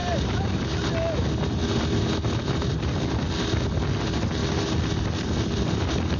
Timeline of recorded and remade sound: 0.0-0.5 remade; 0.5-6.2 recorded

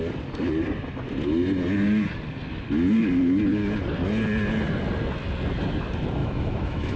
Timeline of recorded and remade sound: 0.0-6.2 recorded; 6.2-7.0 remade